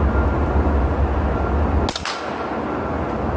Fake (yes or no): no